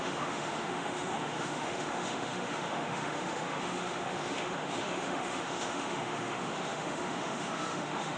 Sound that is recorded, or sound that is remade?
remade